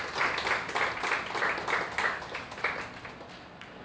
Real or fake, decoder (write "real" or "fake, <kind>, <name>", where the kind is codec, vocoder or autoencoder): real